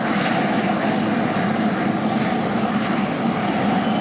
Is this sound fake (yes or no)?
no